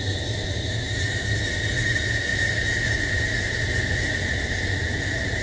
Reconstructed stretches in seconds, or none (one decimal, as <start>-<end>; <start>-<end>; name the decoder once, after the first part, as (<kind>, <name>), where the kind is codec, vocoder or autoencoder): none